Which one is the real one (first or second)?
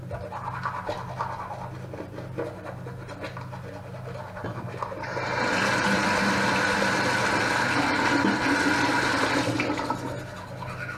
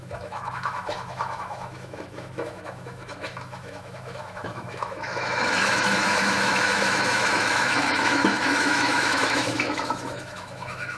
first